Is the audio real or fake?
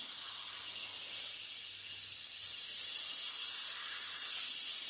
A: real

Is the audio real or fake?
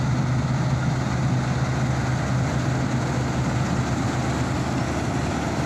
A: real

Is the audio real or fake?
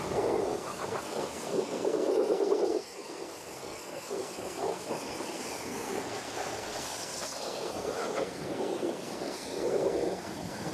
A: fake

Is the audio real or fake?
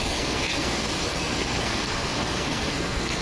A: fake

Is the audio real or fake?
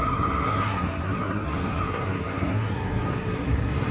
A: fake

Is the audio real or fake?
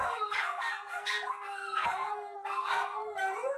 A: fake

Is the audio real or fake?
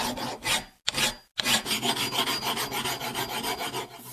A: real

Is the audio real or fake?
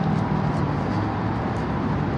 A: real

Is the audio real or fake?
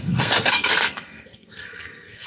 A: fake